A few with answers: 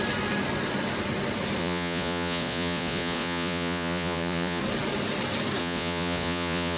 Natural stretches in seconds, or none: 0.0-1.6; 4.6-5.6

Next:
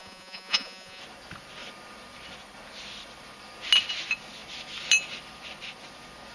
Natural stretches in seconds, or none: 1.0-6.3

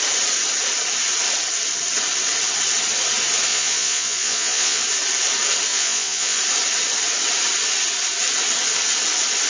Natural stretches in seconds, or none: 0.0-3.5; 4.8-5.7; 6.4-9.5

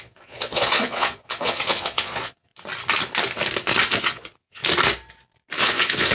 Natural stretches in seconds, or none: 2.5-4.0; 4.6-5.6

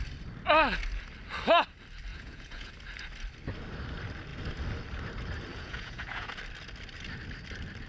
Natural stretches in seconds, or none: 0.0-2.1; 2.7-5.5; 6.4-7.9

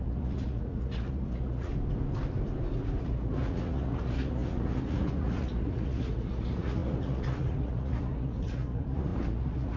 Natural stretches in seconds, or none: 1.7-3.0